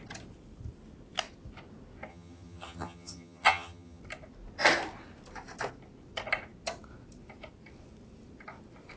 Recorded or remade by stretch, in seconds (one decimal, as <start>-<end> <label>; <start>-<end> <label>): 0.0-2.1 recorded; 2.1-4.0 remade; 4.0-9.0 recorded